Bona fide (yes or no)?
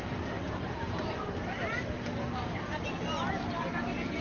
no